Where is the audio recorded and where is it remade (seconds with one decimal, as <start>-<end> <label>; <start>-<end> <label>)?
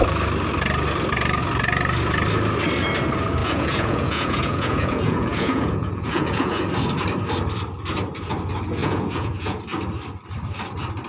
0.0-3.4 recorded; 3.4-6.6 remade; 6.6-8.8 recorded; 8.8-9.6 remade; 9.6-11.1 recorded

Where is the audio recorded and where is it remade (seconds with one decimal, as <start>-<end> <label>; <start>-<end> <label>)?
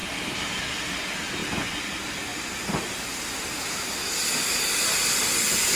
0.0-0.6 remade; 0.6-2.3 recorded; 2.3-4.1 remade; 4.1-5.8 recorded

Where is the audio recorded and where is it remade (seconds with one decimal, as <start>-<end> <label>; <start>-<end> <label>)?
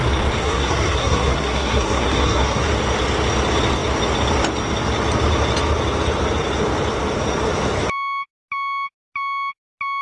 0.0-0.4 recorded; 0.4-2.7 remade; 2.7-10.0 recorded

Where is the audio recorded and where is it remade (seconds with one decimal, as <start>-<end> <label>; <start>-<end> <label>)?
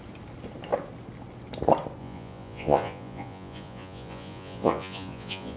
0.0-2.0 recorded; 2.0-5.6 remade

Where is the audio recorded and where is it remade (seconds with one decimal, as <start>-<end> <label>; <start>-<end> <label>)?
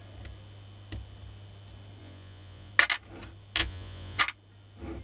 0.0-2.0 recorded; 2.0-2.7 remade; 2.7-3.6 recorded; 3.6-4.2 remade; 4.2-5.0 recorded